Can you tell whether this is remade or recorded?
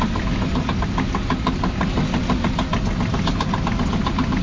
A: recorded